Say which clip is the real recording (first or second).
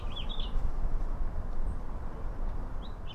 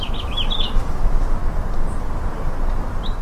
second